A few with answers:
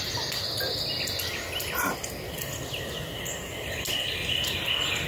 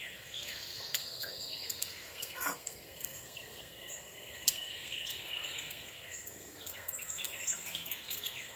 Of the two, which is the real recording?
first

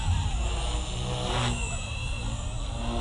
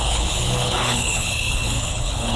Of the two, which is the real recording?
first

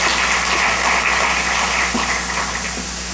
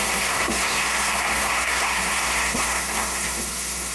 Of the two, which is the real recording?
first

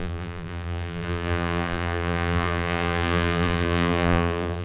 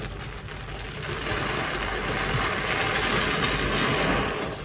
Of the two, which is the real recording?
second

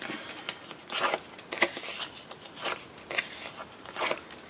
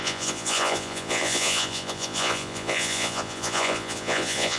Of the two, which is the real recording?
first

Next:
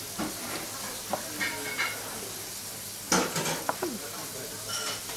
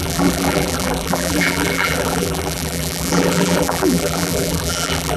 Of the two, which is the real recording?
first